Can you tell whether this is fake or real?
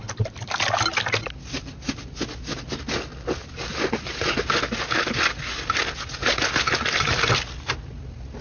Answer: real